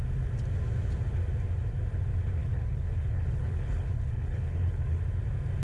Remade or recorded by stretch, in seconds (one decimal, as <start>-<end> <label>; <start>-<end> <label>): 0.0-2.4 recorded; 2.4-5.0 remade; 5.0-5.6 recorded